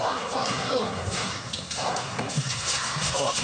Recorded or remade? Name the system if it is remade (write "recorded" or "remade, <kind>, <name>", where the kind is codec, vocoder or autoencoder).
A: remade, codec, SNAC